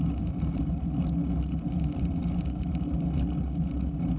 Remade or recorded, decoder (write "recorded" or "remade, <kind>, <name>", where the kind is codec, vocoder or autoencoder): recorded